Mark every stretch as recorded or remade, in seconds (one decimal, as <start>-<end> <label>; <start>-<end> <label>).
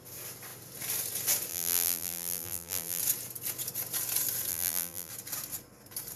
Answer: 0.0-1.5 recorded; 1.5-3.0 remade; 3.0-4.5 recorded; 4.5-5.1 remade; 5.1-6.2 recorded